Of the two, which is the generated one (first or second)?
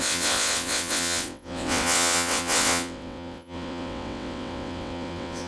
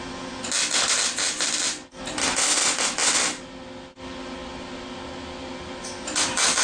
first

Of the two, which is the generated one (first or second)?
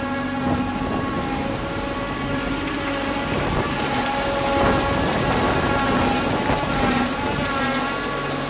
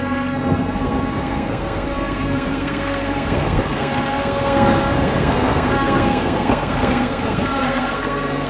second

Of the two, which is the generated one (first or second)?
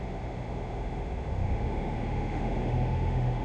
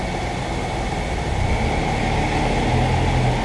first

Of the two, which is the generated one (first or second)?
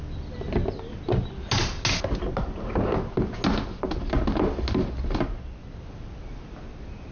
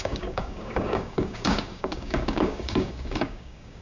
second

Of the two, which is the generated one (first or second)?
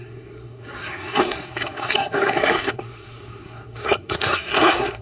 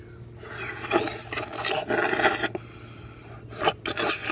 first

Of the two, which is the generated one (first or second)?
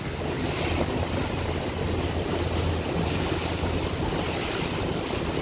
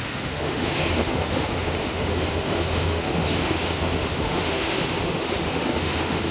second